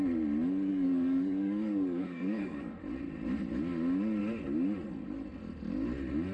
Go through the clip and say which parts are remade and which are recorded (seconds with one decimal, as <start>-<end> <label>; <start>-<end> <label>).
0.0-0.7 recorded; 0.7-2.7 remade; 2.7-6.3 recorded